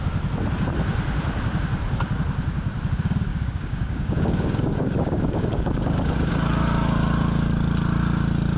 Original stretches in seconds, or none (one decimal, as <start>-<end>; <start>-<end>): 0.0-3.3; 6.3-8.6